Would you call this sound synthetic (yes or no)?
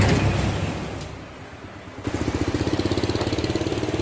no